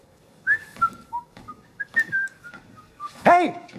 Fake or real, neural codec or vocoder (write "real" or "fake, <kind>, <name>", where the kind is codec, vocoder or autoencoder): fake, codec, DAC